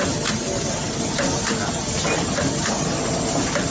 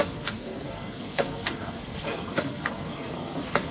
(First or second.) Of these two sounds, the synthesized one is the second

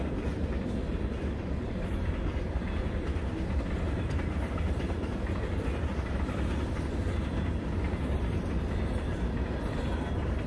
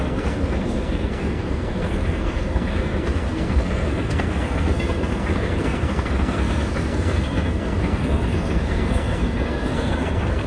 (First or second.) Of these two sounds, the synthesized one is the second